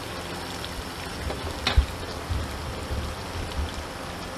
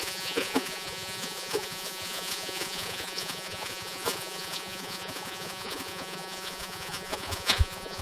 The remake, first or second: second